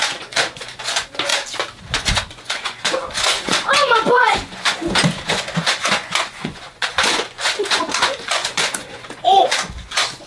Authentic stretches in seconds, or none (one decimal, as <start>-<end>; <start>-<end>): 1.3-1.8